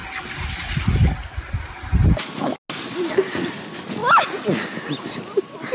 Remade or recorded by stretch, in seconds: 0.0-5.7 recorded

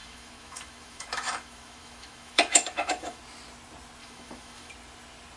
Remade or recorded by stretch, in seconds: 0.0-3.2 remade; 3.2-4.0 recorded; 4.0-4.7 remade; 4.7-5.4 recorded

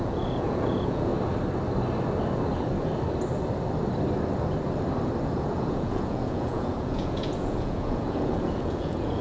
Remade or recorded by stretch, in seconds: 0.0-1.1 remade; 1.1-5.2 recorded; 5.2-9.2 remade

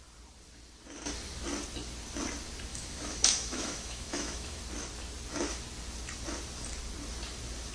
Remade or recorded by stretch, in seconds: 0.0-2.7 recorded; 2.7-4.6 remade; 4.6-7.7 recorded

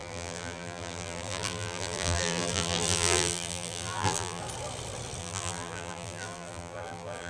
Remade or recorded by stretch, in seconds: 0.0-4.4 remade; 4.4-5.2 recorded; 5.2-7.3 remade

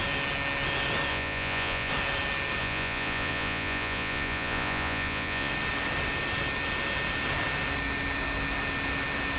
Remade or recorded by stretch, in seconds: 0.0-1.1 recorded; 1.1-1.9 remade; 1.9-2.6 recorded; 2.6-5.5 remade; 5.5-9.4 recorded

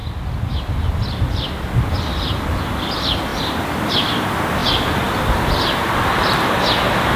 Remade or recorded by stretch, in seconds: 0.0-0.5 remade; 0.5-4.6 recorded; 4.6-5.2 remade; 5.2-7.2 recorded